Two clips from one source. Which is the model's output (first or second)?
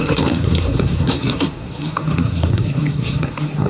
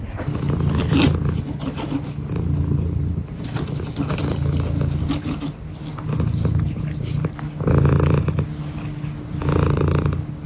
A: first